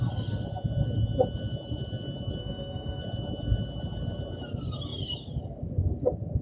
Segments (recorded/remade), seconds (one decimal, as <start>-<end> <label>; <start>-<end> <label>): 0.0-2.4 recorded; 2.4-3.0 remade; 3.0-6.4 recorded